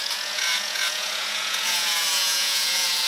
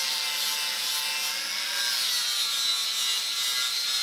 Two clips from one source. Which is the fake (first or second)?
first